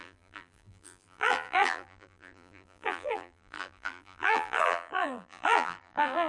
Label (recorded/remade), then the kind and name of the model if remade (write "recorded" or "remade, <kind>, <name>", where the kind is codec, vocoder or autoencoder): remade, vocoder, BigVGAN v2